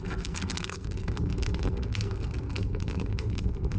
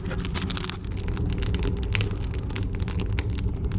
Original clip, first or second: second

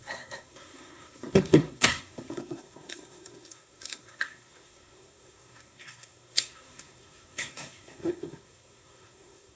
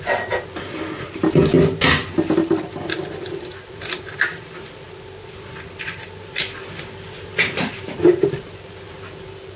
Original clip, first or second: second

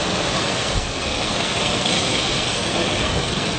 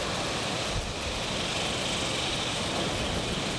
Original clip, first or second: second